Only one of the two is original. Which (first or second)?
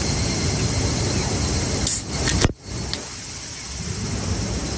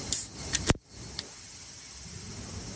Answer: first